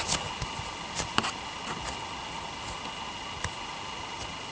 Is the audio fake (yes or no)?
no